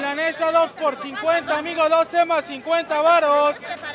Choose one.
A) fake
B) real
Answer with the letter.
B